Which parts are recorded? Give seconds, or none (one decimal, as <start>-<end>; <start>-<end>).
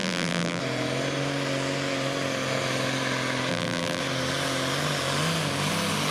0.6-3.5; 4.0-6.1